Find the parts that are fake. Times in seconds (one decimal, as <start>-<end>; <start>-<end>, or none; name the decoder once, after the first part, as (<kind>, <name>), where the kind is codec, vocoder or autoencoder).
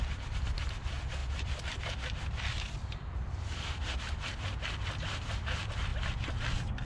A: 1.2-4.0 (vocoder, BigVGAN v2)